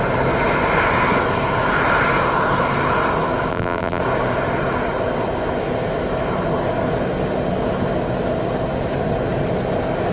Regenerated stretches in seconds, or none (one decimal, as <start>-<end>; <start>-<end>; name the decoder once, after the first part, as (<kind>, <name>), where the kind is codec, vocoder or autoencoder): 3.5-4.0 (vocoder, BigVGAN v2)